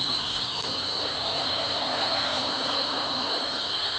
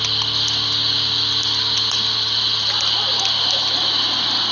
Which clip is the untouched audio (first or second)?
second